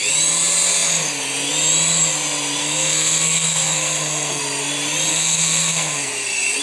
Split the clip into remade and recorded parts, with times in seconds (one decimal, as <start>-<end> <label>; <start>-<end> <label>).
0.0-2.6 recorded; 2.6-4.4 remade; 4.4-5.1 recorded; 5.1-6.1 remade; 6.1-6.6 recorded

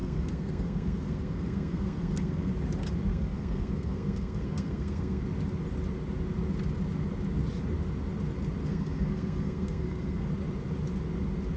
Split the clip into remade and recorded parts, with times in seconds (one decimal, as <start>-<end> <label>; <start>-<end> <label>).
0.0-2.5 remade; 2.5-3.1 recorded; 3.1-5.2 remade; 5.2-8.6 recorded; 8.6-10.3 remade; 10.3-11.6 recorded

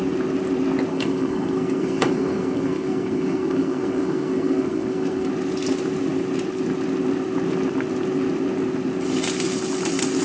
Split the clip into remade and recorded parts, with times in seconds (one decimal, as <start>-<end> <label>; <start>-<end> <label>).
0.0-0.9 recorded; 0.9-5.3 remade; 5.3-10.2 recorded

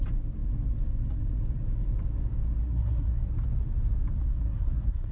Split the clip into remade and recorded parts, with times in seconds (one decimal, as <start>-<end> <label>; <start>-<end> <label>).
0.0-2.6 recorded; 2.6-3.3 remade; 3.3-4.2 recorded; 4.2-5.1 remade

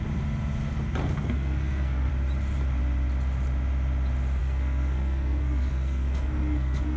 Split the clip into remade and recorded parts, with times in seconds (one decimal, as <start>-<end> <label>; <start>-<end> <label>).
0.0-1.0 recorded; 1.0-2.1 remade; 2.1-4.4 recorded; 4.4-7.0 remade

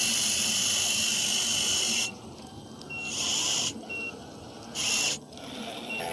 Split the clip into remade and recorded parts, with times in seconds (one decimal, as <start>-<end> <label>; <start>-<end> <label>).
0.0-6.1 recorded

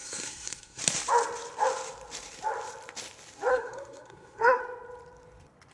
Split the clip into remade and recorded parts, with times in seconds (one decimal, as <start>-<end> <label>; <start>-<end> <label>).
0.0-0.8 remade; 0.8-3.5 recorded; 3.5-4.6 remade; 4.6-5.7 recorded

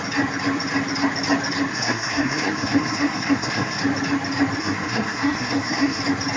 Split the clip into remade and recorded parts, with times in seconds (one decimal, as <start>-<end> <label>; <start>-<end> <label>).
0.0-1.7 recorded; 1.7-3.8 remade; 3.8-4.6 recorded; 4.6-6.0 remade; 6.0-6.4 recorded